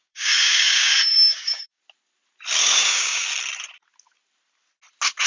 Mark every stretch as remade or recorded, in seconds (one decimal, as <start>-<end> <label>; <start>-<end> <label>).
0.0-1.8 remade; 1.8-2.6 recorded; 2.6-3.3 remade; 3.3-5.3 recorded